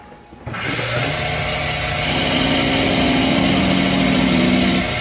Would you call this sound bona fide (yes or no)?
yes